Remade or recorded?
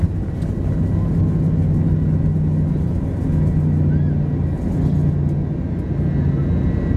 recorded